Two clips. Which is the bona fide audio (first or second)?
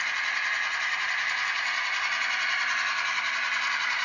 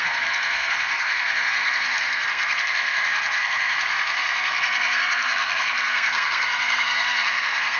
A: first